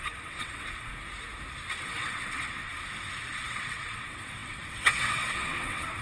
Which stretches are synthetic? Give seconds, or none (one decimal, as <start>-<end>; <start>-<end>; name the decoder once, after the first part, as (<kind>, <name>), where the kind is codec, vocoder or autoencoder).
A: 0.0-0.9 (vocoder, WaveNeXt); 1.8-2.7; 3.3-6.0